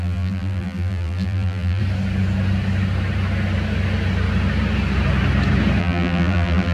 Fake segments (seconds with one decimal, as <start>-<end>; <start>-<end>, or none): 0.0-1.8; 5.8-6.7